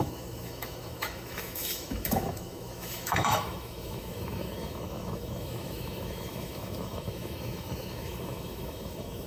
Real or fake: fake